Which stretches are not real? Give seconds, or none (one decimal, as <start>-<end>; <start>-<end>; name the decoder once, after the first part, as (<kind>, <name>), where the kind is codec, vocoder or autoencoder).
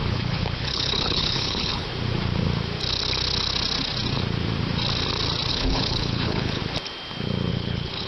0.0-1.9 (codec, HILCodec); 5.5-6.6; 7.5-8.1